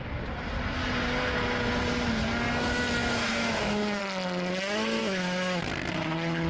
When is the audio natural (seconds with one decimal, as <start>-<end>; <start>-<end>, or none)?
0.0-3.0; 4.0-5.0; 5.7-6.5